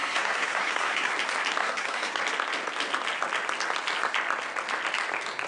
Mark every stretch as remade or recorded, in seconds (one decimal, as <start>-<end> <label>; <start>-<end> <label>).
0.0-1.1 remade; 1.1-1.6 recorded; 1.6-2.2 remade; 2.2-5.5 recorded